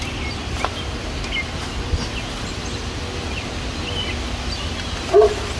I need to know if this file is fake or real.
real